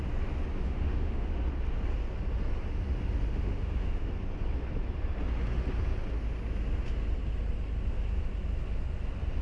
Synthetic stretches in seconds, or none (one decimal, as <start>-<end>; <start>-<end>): 0.6-1.3; 3.3-4.1

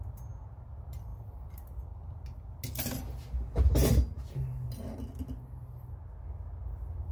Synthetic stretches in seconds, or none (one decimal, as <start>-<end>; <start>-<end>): none

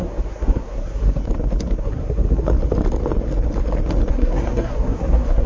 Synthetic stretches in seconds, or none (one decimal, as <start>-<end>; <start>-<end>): 0.0-1.2; 1.8-2.5; 4.1-5.5